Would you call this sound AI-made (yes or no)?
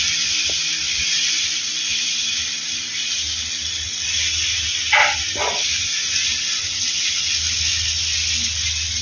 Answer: no